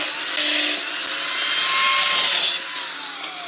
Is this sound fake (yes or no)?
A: no